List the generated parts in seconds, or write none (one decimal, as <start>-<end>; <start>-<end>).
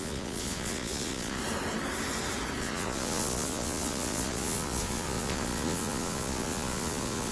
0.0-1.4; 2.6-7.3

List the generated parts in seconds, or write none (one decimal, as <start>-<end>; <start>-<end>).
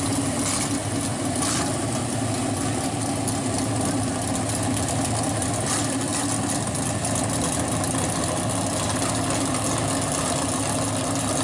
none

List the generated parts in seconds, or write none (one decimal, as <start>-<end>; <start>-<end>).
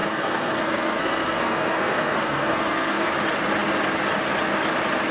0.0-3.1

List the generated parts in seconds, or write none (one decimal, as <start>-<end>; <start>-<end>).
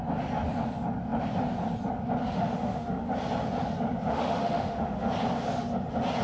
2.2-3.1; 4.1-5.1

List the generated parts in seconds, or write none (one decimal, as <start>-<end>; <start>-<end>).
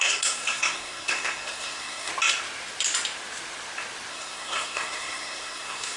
0.0-2.1; 4.1-6.0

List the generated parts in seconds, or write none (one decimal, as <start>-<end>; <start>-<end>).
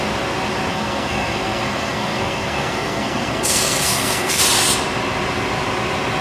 0.7-4.4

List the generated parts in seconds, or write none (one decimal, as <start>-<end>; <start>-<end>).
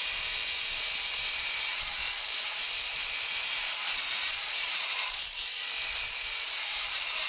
0.0-5.5; 6.6-7.3